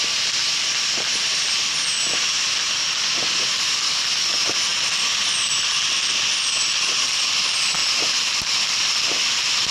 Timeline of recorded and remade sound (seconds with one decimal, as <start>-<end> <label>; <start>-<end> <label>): 0.0-9.7 recorded